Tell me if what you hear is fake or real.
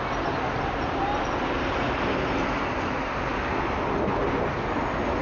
real